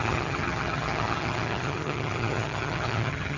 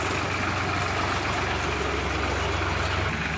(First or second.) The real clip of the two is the second